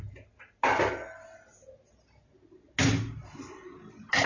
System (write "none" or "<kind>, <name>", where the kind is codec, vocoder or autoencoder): none